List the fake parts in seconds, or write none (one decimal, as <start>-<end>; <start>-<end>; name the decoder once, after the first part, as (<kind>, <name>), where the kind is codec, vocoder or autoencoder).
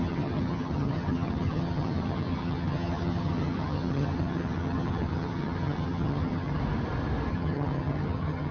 0.0-6.6 (vocoder, HiFi-GAN); 7.3-8.5